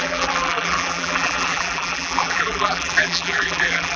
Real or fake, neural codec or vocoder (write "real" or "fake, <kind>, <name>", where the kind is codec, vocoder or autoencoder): fake, vocoder, BigVGAN v2